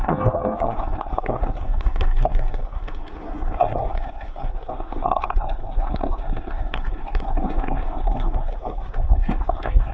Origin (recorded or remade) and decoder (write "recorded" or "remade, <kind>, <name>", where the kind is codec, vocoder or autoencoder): remade, codec, SNAC